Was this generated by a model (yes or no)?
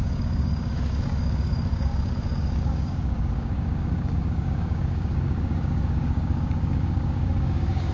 yes